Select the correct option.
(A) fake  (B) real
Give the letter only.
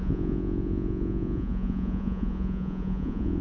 A